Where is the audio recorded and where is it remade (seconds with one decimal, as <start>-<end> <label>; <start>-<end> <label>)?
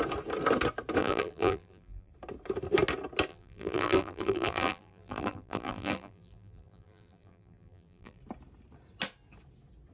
0.0-1.0 recorded; 1.0-2.1 remade; 2.1-3.3 recorded; 3.3-8.2 remade; 8.2-9.9 recorded